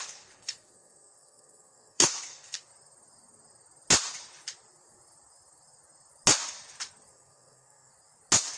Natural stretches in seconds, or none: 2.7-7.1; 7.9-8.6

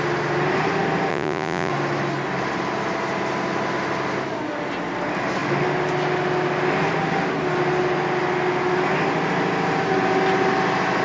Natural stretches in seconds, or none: 0.0-1.1; 1.7-11.0

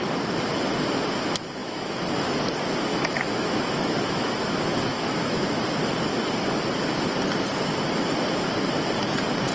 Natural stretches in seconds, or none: 0.0-1.6; 2.1-2.9; 5.6-9.5